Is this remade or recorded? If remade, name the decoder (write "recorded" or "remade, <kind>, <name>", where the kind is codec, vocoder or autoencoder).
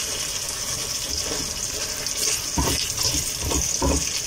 recorded